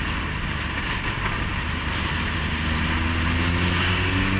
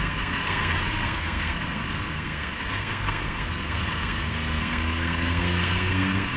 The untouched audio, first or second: first